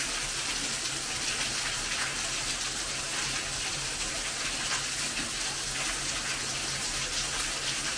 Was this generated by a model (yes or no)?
no